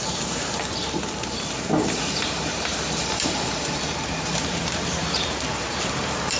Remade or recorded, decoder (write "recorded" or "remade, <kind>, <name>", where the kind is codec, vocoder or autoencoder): remade, vocoder, BigVGAN v2